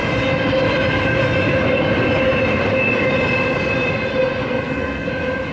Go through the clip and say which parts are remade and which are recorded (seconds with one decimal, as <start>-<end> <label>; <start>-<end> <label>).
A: 0.0-4.3 recorded; 4.3-5.1 remade; 5.1-5.5 recorded